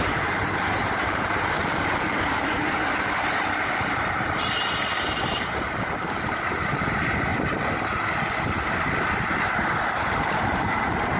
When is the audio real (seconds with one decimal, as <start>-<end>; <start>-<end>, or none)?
7.3-10.0